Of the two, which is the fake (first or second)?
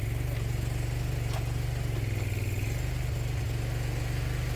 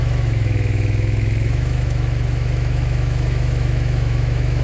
second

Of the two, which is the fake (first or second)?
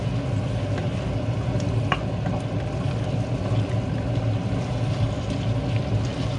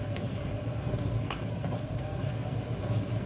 second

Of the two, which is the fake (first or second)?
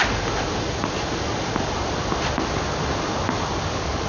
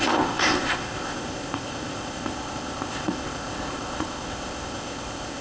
second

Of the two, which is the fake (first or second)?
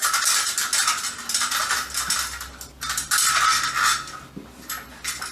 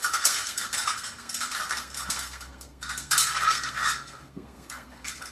second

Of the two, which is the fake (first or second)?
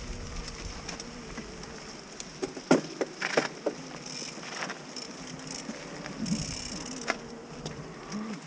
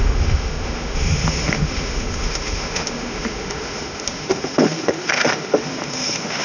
second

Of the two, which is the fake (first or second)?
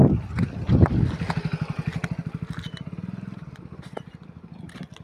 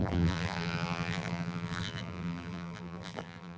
second